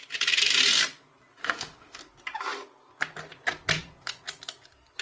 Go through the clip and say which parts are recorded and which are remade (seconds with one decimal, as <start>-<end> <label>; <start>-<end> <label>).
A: 0.0-1.4 recorded; 1.4-2.0 remade; 2.0-5.0 recorded